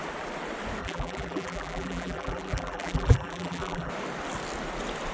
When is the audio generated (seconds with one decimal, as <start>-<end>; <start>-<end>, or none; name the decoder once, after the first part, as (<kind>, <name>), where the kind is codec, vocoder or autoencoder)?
0.8-3.9 (vocoder, BigVGAN v2)